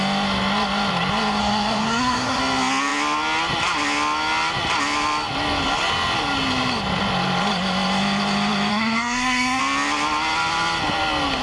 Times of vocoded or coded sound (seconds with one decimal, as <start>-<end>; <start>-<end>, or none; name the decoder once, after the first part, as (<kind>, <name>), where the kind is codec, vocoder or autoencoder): 1.4-2.4 (codec, SNAC); 8.7-9.6